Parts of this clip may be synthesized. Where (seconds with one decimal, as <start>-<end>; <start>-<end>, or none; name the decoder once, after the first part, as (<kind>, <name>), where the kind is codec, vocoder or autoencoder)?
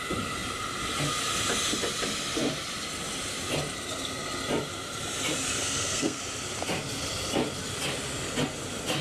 5.6-6.2 (codec, SNAC)